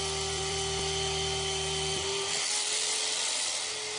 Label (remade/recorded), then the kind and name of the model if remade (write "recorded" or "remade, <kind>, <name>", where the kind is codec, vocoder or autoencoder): remade, vocoder, BigVGAN v2